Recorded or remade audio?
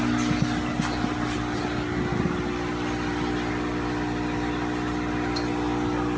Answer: recorded